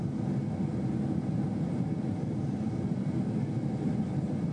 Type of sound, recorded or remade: recorded